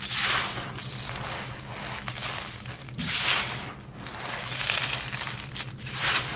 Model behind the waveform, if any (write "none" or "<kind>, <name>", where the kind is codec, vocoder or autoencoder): none